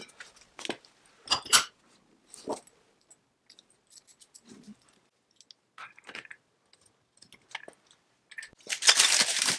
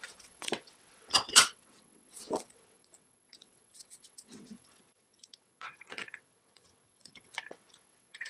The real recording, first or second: first